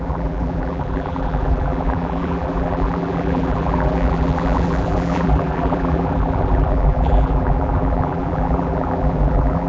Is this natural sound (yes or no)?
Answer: no